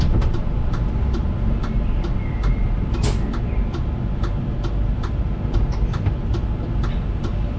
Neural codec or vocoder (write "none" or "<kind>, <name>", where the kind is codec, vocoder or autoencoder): none